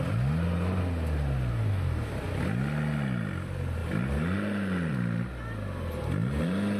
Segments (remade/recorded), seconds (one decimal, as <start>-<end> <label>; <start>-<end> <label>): 0.0-1.5 recorded; 1.5-2.1 remade; 2.1-6.8 recorded

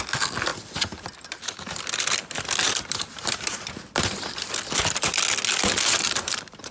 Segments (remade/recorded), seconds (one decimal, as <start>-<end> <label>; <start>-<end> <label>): 0.0-6.7 recorded